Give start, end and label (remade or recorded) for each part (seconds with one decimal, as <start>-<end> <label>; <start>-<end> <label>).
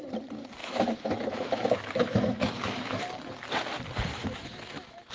0.0-0.6 recorded; 0.6-3.0 remade; 3.0-4.1 recorded; 4.1-5.1 remade